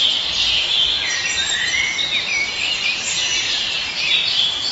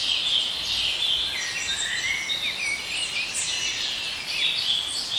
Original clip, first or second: second